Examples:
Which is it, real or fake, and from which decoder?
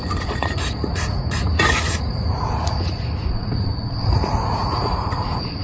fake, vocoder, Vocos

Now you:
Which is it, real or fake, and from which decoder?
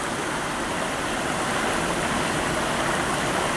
real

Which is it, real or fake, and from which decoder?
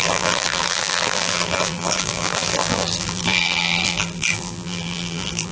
fake, vocoder, BigVGAN v2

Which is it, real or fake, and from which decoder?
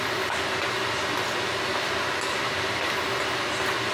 real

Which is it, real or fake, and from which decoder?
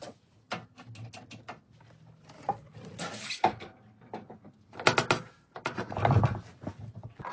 real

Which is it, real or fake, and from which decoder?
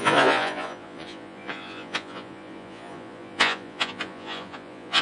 fake, vocoder, Vocos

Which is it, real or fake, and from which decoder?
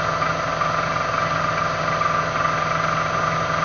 real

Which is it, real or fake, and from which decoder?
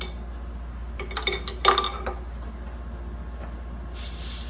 real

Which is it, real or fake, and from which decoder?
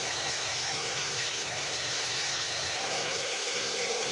fake, codec, SNAC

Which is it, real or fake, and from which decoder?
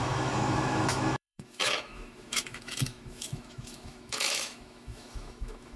fake, autoencoder, DAC-VAE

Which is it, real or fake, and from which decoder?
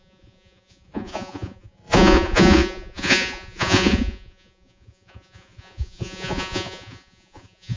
fake, vocoder, Vocos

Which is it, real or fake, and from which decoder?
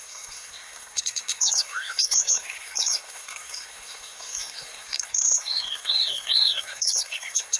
fake, codec, SNAC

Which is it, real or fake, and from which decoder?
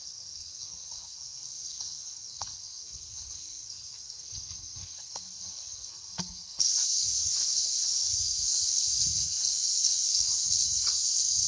fake, codec, SNAC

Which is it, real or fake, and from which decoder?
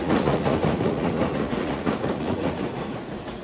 fake, vocoder, Vocos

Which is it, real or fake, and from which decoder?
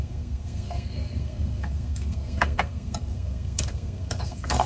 fake, codec, SNAC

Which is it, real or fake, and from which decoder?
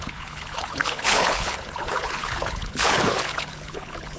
fake, codec, HILCodec